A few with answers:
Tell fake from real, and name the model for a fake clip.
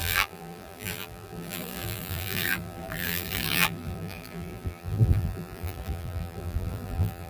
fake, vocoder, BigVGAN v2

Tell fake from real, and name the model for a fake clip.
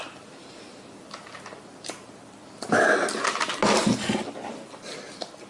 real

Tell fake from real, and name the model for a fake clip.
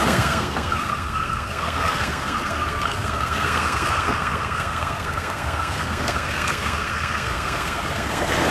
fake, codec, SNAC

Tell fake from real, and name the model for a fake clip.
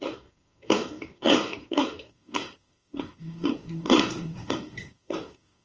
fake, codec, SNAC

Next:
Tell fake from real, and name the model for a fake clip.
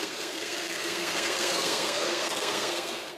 fake, codec, SNAC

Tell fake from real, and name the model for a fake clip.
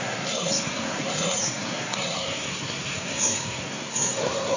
fake, codec, SNAC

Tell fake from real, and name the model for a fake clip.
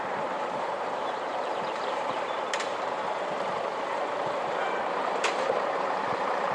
fake, vocoder, BigVGAN v2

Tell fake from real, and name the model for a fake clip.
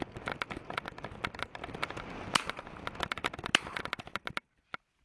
real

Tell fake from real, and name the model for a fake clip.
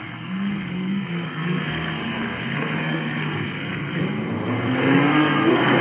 fake, codec, SNAC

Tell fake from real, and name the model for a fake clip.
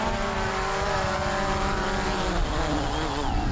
real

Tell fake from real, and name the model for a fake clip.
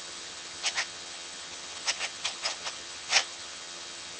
fake, vocoder, HiFi-GAN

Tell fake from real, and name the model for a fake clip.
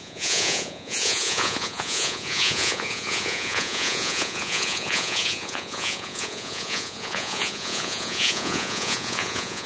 fake, vocoder, Vocos